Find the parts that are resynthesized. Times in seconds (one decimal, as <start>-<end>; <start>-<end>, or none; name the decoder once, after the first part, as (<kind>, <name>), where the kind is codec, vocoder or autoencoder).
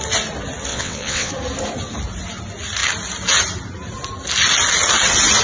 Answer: 0.7-1.3 (vocoder, WaveNeXt)